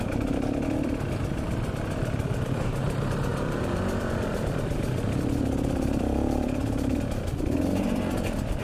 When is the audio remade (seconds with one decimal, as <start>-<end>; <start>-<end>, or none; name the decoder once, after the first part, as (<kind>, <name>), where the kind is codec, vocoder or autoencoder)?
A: 0.0-8.6 (vocoder, BigVGAN v2)